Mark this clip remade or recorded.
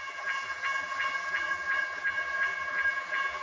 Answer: remade